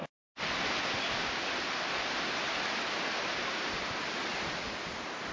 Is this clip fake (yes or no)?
no